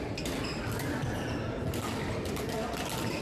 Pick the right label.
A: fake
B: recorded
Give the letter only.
B